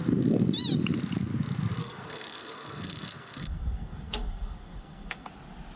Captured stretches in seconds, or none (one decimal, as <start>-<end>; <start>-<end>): 0.0-1.8; 5.3-5.8